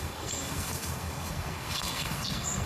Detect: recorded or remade remade